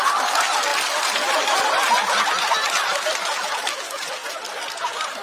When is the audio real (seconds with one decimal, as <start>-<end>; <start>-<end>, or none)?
0.0-5.2